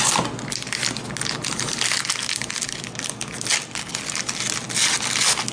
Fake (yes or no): no